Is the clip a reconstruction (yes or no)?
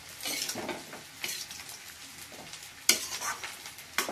no